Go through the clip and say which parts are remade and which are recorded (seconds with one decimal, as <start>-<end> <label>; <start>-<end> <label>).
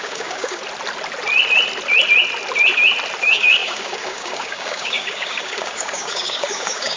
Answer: 0.0-0.6 remade; 0.6-3.2 recorded; 3.2-7.0 remade